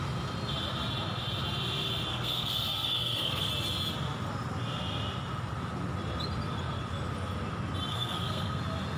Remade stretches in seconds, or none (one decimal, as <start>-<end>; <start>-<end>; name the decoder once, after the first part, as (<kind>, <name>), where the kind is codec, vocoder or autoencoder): 2.1-3.5 (codec, SNAC); 7.9-8.6